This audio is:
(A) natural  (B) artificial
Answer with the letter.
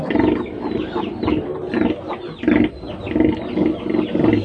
A